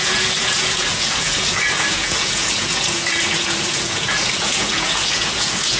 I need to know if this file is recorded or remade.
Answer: remade